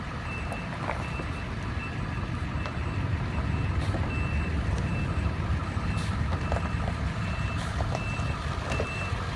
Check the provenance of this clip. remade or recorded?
remade